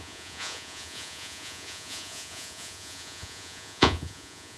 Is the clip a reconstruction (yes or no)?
yes